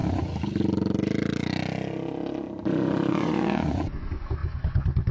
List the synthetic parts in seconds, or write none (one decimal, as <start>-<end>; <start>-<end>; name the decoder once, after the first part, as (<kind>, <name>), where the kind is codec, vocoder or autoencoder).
3.1-5.1 (vocoder, Vocos)